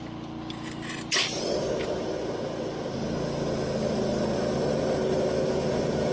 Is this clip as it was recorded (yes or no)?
yes